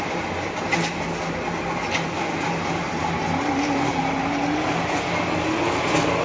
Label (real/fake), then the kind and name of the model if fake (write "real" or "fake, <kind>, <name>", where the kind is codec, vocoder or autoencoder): real